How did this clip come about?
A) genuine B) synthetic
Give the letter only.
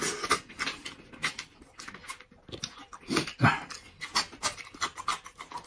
A